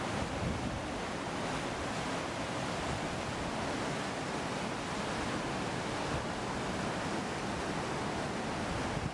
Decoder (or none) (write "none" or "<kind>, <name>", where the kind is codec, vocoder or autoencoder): none